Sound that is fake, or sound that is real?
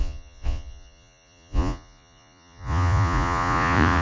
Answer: fake